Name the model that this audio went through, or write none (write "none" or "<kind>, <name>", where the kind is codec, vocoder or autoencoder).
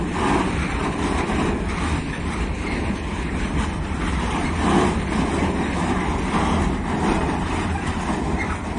vocoder, BigVGAN v2